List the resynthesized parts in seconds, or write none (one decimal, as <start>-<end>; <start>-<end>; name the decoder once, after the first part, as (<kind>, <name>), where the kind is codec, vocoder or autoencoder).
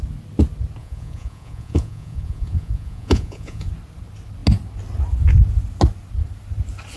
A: 0.8-3.7 (vocoder, Vocos)